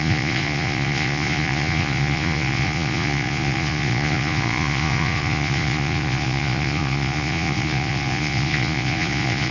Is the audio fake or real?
fake